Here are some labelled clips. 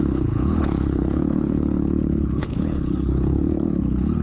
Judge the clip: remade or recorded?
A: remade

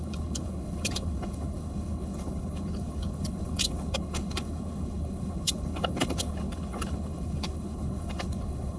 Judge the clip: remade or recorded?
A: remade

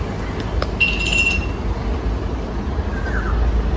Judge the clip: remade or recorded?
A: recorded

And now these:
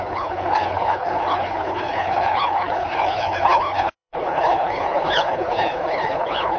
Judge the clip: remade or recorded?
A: remade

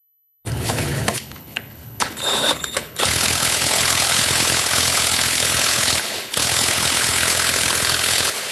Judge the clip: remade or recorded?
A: remade